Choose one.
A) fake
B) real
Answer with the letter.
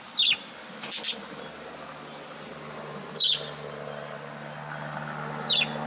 B